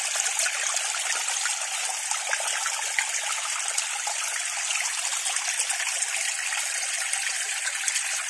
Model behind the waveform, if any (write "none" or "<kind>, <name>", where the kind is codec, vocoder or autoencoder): none